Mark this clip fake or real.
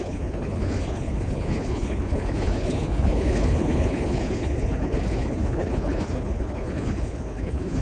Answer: fake